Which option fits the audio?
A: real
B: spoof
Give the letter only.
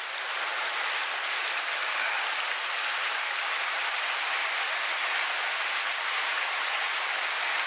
A